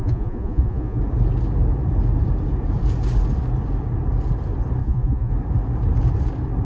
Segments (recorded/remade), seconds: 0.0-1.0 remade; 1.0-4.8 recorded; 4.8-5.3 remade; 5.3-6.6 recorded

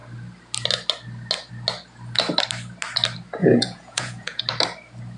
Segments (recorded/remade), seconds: 0.0-3.4 recorded; 3.4-4.4 remade; 4.4-5.2 recorded

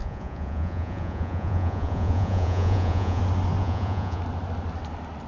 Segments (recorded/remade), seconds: 0.0-3.2 remade; 3.2-3.6 recorded; 3.6-4.2 remade; 4.2-5.3 recorded